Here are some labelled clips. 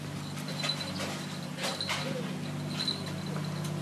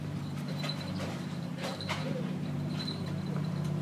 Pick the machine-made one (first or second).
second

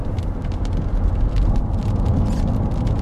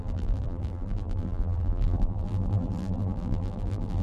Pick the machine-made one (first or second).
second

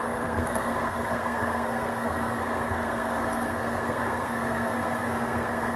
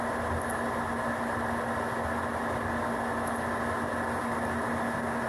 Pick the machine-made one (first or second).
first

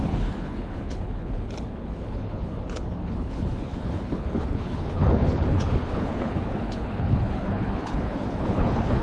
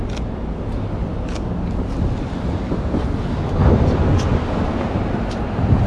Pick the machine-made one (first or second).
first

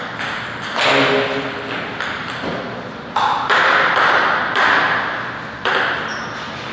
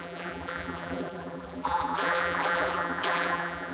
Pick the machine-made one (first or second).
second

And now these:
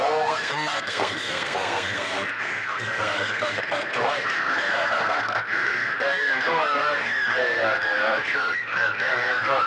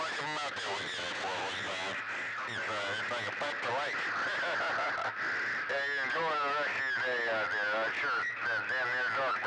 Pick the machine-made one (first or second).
first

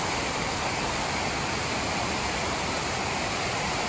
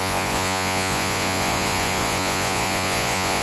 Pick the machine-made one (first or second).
second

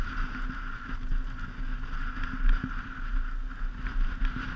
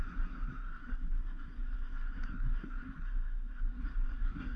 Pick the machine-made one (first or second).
second